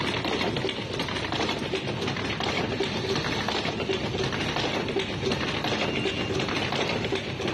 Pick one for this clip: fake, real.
real